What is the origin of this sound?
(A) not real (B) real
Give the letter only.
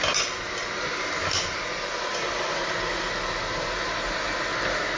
B